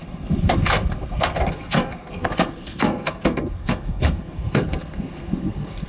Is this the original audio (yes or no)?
no